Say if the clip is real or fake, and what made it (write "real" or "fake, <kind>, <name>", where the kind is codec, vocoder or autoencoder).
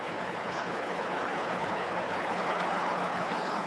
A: fake, codec, HILCodec